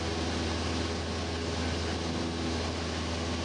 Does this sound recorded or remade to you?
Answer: recorded